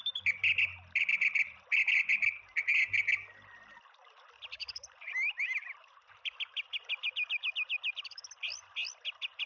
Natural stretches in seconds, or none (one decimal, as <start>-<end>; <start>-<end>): 0.0-4.6; 6.4-9.5